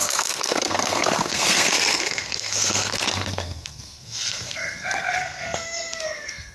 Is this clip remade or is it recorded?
remade